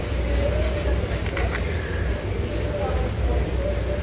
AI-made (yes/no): no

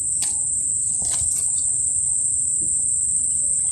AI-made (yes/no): no